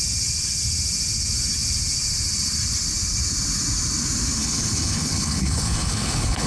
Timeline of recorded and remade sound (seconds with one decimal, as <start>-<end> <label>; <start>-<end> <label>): 0.0-4.4 recorded; 4.4-6.5 remade